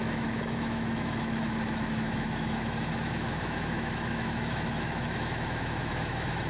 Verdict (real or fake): fake